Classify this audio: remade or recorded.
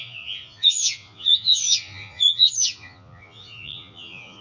remade